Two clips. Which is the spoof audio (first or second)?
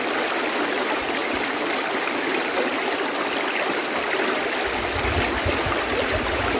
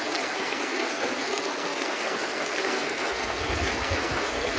second